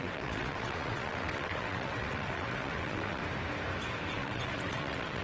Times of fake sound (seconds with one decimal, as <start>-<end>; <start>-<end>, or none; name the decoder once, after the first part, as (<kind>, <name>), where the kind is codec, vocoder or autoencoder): 0.0-3.2 (vocoder, WaveNeXt); 4.1-5.2